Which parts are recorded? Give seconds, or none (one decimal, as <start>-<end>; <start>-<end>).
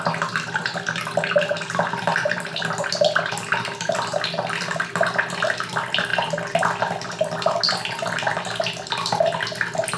0.0-10.0